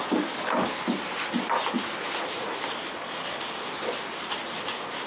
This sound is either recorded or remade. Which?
recorded